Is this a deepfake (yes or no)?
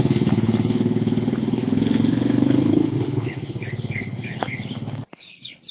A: yes